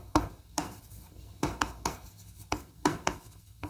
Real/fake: fake